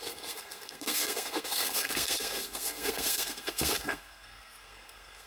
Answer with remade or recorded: remade